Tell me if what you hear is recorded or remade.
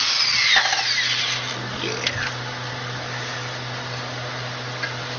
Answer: recorded